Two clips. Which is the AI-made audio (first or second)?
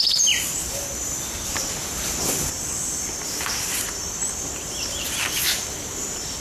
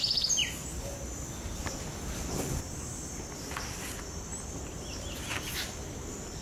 first